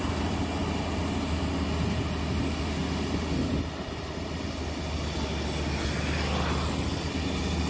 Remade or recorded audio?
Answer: recorded